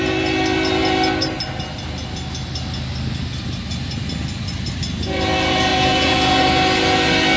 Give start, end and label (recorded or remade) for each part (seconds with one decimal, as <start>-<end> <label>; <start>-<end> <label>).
0.0-5.7 recorded; 5.7-6.4 remade; 6.4-7.4 recorded